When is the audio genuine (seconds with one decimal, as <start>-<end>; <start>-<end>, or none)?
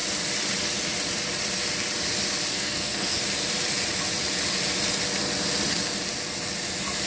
0.0-2.5; 3.2-7.1